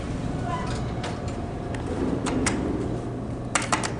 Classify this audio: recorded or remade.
recorded